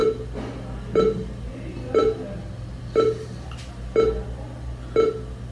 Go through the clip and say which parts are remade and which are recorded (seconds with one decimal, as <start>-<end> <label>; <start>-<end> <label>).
0.0-5.5 recorded